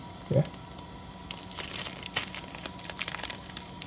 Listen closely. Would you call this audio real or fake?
fake